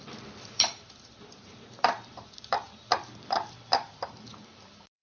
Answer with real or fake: fake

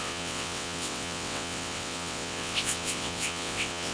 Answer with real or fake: fake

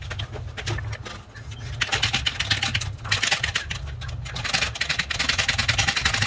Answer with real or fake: real